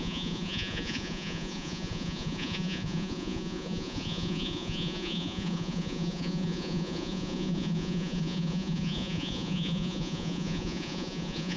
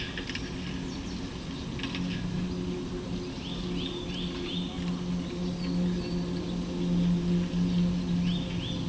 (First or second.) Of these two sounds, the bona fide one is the second